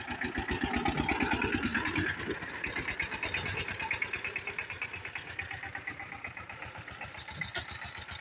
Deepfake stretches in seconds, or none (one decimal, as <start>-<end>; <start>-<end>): none